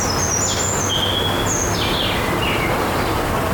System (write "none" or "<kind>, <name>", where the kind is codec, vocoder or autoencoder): none